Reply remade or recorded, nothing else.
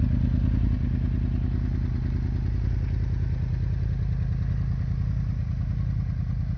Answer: recorded